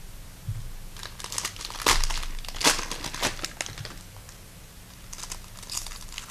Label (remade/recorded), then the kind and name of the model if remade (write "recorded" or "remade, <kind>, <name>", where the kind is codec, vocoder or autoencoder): recorded